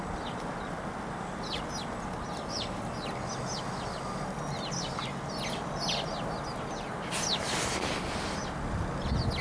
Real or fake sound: real